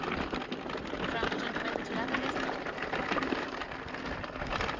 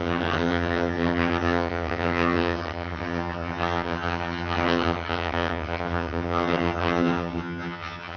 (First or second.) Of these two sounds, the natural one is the first